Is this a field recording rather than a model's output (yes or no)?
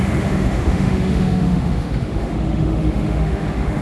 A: no